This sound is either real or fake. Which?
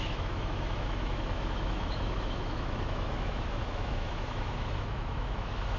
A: fake